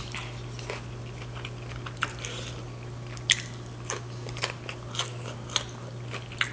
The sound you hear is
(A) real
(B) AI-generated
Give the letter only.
A